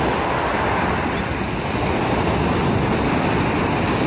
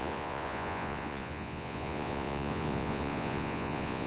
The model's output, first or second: second